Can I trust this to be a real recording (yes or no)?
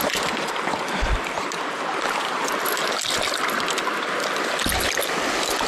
yes